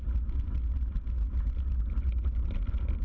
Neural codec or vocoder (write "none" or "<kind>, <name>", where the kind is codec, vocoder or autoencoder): none